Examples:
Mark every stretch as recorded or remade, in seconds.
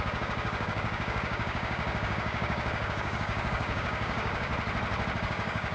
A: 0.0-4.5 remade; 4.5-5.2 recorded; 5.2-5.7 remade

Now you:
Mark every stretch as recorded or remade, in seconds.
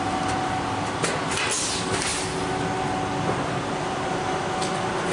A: 0.0-5.1 recorded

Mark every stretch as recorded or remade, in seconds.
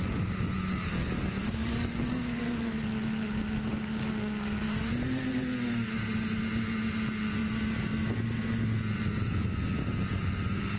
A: 0.0-1.6 recorded; 1.6-2.4 remade; 2.4-3.7 recorded; 3.7-4.6 remade; 4.6-10.8 recorded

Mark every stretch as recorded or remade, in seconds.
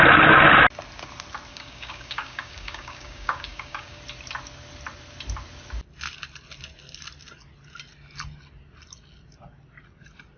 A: 0.0-1.5 recorded; 1.5-4.0 remade; 4.0-10.4 recorded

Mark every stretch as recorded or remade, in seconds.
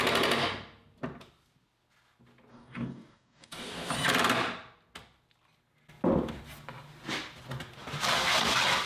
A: 0.0-2.5 recorded; 2.5-3.9 remade; 3.9-8.9 recorded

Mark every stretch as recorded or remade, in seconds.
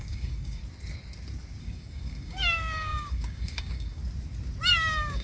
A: 0.0-0.6 remade; 0.6-1.6 recorded; 1.6-4.0 remade; 4.0-4.7 recorded; 4.7-5.2 remade